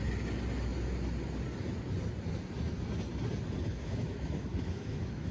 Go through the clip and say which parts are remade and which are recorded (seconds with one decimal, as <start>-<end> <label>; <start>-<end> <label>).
0.0-3.7 recorded; 3.7-5.3 remade